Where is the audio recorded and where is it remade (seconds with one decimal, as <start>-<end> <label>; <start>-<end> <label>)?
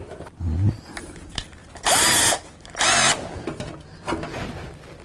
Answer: 0.0-5.0 recorded